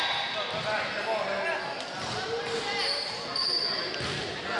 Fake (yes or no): no